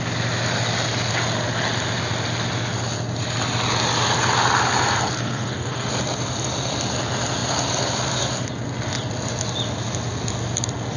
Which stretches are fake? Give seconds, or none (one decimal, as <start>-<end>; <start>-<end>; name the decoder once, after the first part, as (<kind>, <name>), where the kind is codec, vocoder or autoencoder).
5.2-5.9 (codec, SNAC)